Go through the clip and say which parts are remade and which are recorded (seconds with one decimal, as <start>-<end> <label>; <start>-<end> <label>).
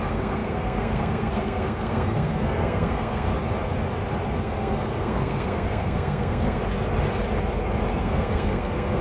0.0-3.3 remade; 3.3-4.4 recorded; 4.4-6.6 remade; 6.6-8.0 recorded; 8.0-9.0 remade